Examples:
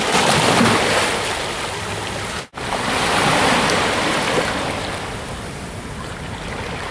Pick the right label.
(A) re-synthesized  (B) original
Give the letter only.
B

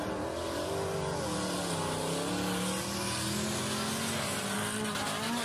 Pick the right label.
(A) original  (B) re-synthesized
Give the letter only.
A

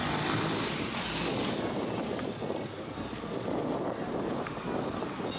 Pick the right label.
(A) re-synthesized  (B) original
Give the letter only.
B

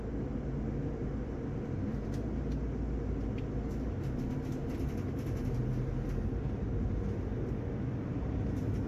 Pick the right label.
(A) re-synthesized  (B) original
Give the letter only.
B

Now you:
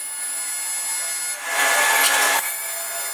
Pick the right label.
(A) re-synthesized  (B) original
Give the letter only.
B